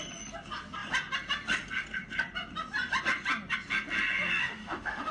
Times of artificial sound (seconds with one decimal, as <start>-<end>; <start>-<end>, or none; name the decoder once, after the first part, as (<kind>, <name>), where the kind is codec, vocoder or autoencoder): 4.4-5.1 (autoencoder, DAC-VAE)